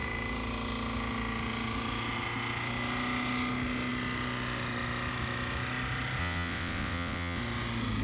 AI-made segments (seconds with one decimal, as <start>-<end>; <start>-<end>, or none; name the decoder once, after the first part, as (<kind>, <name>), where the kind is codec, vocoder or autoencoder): 6.2-7.4 (vocoder, WaveNeXt)